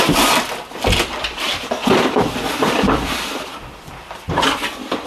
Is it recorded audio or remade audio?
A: remade